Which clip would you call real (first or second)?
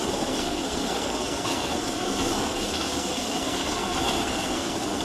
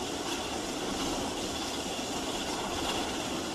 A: second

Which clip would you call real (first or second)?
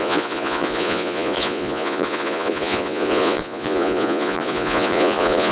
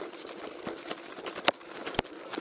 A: second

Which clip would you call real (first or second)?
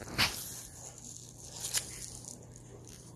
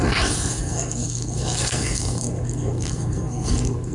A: first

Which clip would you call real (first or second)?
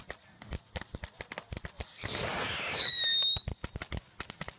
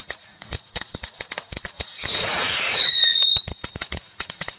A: first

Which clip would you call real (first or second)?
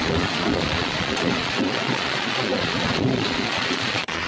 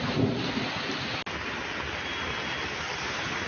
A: second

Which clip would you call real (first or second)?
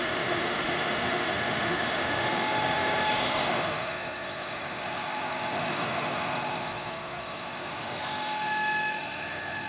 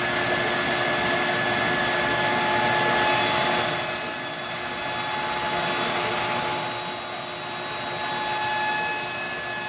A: second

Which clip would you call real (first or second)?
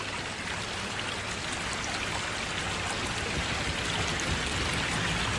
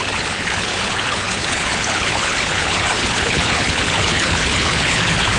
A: first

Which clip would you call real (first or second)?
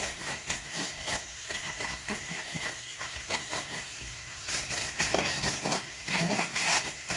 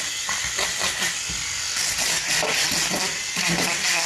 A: second